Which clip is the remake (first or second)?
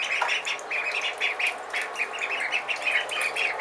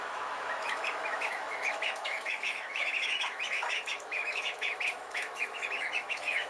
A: second